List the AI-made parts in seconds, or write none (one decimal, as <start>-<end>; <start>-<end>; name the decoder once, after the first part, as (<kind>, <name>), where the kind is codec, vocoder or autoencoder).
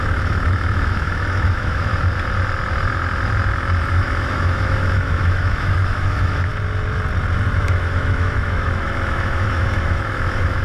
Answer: 0.0-1.9 (autoencoder, DAC-VAE); 3.9-6.5; 7.6-10.6